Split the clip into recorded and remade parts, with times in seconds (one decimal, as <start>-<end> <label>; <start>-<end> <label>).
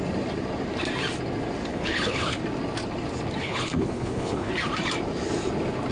0.0-1.7 recorded; 1.7-2.4 remade; 2.4-3.4 recorded; 3.4-4.5 remade; 4.5-5.9 recorded